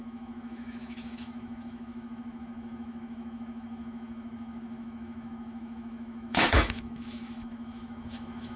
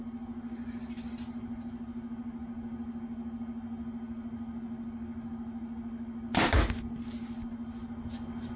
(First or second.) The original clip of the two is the second